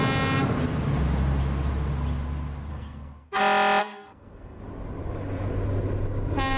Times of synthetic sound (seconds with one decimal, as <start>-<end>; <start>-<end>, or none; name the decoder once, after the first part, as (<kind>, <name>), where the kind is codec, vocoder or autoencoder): 2.7-3.4 (codec, SNAC); 3.8-4.6